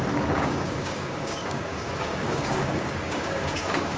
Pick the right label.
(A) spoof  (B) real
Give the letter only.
A